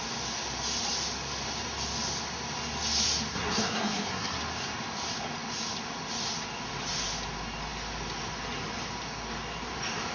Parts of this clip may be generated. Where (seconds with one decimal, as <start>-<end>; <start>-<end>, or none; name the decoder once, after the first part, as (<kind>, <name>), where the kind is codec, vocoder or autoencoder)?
3.3-4.4 (codec, SNAC)

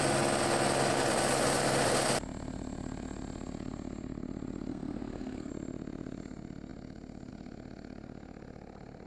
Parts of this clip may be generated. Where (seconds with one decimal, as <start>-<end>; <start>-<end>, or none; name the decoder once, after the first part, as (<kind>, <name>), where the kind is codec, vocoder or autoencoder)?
4.7-5.5 (codec, SNAC)

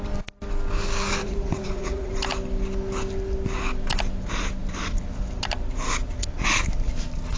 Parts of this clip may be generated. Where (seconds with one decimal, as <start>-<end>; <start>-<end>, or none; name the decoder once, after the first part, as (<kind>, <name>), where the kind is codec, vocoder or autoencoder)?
1.2-2.1 (vocoder, Vocos)

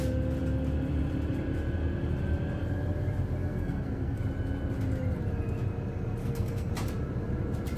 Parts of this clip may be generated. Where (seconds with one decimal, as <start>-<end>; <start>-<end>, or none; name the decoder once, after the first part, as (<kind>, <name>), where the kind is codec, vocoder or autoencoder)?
3.4-4.2 (codec, SNAC); 6.2-6.7

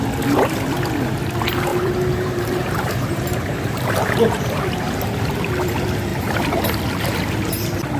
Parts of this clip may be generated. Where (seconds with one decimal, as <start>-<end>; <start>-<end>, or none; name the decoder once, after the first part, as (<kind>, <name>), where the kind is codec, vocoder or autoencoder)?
1.7-3.9 (vocoder, BigVGAN v2)

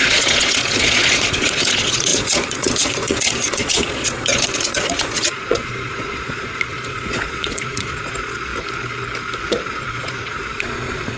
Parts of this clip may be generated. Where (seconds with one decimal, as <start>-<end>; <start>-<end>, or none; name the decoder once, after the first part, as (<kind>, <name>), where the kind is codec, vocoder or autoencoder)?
0.0-8.5 (vocoder, Vocos); 9.5-11.2

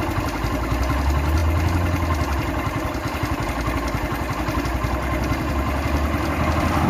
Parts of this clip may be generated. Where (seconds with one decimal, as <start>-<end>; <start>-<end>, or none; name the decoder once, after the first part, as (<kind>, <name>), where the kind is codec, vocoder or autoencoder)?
none